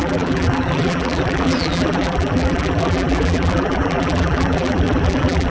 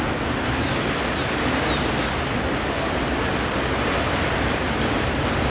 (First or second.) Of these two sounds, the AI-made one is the first